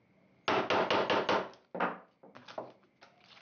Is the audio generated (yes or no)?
no